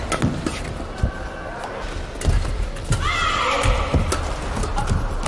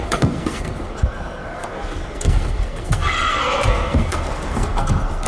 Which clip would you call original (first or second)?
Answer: first